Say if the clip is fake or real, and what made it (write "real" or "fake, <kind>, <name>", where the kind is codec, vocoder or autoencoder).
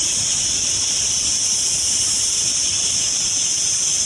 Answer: real